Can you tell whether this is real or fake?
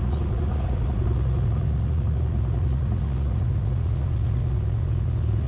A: fake